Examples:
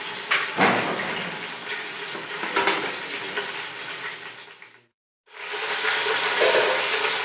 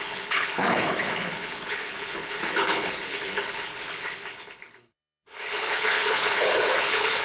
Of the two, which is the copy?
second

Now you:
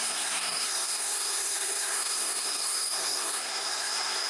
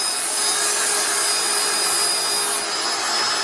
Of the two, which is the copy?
first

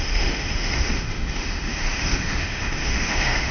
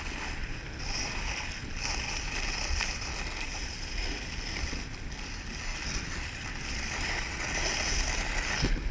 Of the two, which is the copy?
first